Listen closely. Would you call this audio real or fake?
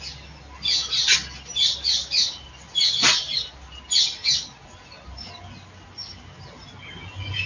real